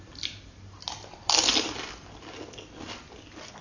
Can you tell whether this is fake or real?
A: real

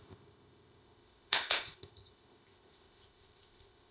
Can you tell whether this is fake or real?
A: fake